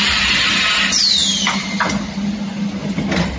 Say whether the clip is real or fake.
real